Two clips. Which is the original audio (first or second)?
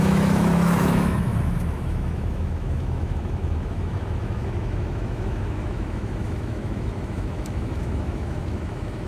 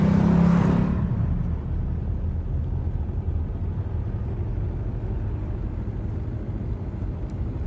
second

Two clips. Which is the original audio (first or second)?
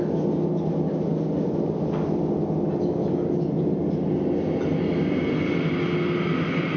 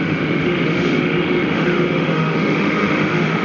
first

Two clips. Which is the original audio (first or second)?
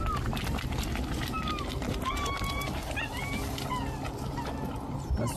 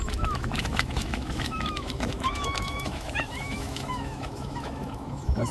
first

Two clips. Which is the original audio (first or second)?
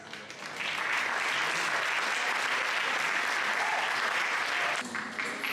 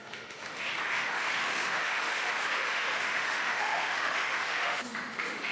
first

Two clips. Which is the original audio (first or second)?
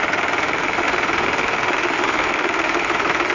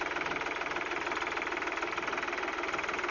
second